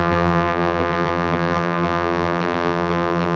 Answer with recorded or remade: remade